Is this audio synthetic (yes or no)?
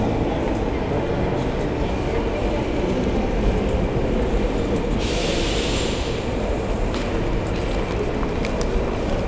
no